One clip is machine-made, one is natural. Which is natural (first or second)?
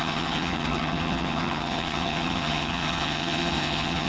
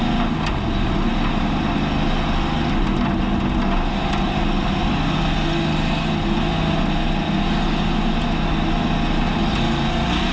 second